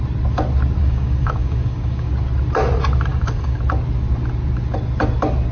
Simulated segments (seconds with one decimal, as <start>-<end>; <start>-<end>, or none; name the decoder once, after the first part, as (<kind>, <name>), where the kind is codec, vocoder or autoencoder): 0.8-2.1 (codec, DAC); 3.1-3.6